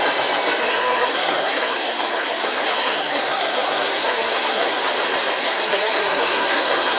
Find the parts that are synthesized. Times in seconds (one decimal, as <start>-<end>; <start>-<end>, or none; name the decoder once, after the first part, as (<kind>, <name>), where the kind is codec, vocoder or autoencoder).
0.6-4.8 (codec, SNAC); 5.4-7.0